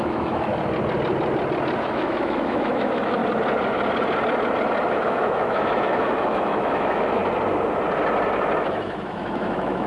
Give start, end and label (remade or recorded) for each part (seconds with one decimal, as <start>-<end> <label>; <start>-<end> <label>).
0.0-0.5 remade; 0.5-1.8 recorded; 1.8-3.2 remade; 3.2-4.9 recorded; 4.9-7.2 remade; 7.2-8.6 recorded; 8.6-9.9 remade